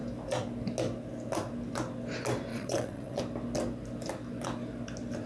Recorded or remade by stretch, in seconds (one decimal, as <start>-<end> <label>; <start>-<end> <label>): 0.0-2.5 recorded; 2.5-3.2 remade; 3.2-5.3 recorded